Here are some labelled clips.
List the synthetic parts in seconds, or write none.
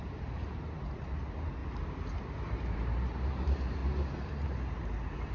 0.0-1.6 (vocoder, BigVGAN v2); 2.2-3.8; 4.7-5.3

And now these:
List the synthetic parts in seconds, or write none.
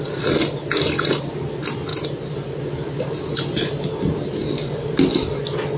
1.9-2.6 (vocoder, BigVGAN v2)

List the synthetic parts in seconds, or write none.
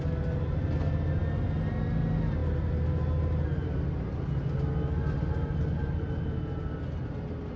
none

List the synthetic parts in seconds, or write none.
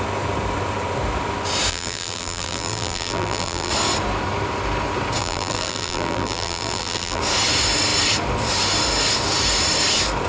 1.7-3.7 (vocoder, BigVGAN v2); 5.2-7.2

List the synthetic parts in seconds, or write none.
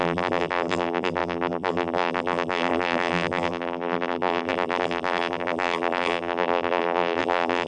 0.0-7.7 (vocoder, BigVGAN v2)